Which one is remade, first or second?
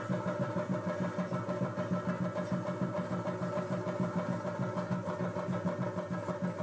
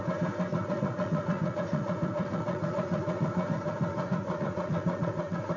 second